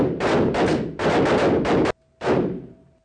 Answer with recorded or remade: recorded